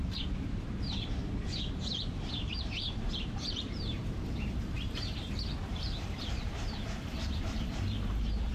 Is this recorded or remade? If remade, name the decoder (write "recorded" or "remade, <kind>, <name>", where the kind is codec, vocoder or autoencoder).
remade, vocoder, BigVGAN v2